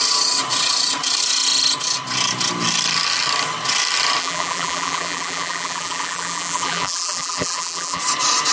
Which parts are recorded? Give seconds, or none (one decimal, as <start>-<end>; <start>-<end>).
0.0-4.2; 8.0-8.5